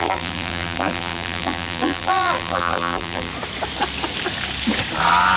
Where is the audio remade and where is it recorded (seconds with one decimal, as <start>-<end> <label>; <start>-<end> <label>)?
0.0-3.3 remade; 3.3-5.4 recorded